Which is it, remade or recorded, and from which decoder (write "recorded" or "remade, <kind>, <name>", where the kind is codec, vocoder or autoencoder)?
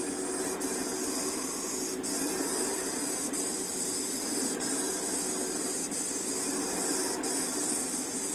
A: recorded